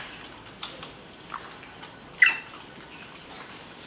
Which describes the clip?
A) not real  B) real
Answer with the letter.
B